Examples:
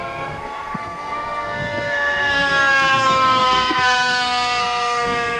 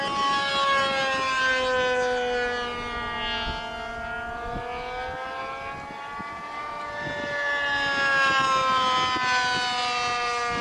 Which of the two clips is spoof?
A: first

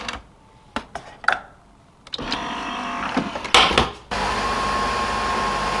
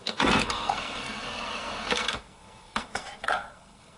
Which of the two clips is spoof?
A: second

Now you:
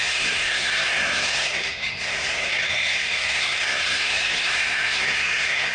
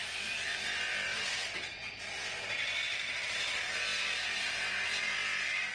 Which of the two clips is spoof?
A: first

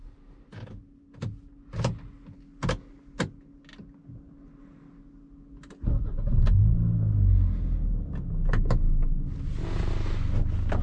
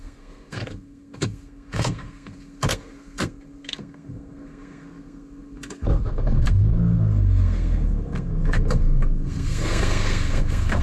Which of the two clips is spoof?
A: second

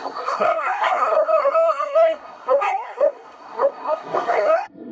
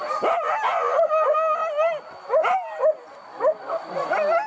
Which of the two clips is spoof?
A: first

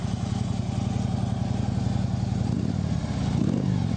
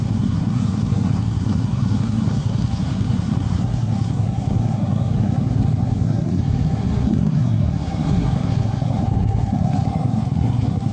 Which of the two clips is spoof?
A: second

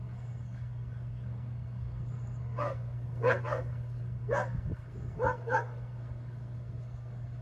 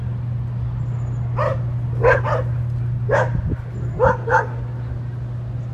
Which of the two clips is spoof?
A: first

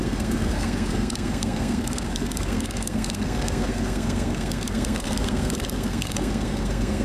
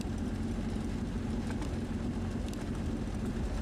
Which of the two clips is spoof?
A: first